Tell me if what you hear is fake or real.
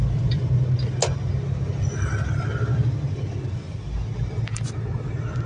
real